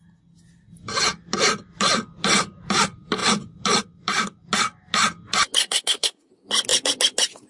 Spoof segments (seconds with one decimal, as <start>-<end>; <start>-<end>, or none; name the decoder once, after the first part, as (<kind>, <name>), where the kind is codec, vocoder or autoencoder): 5.6-6.3 (codec, SNAC)